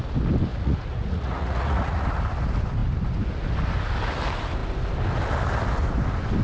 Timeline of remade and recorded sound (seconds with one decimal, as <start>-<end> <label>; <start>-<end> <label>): 0.0-0.5 recorded; 0.5-2.2 remade; 2.2-6.4 recorded